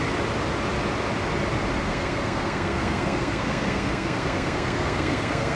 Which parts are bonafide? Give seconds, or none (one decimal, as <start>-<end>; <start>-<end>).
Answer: 0.0-1.9